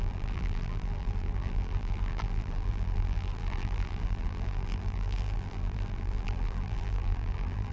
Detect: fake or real fake